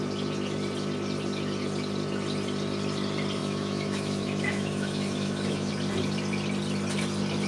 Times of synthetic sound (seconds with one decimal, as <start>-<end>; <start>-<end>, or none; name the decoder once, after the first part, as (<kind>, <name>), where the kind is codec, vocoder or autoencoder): 3.4-5.7 (autoencoder, DAC-VAE)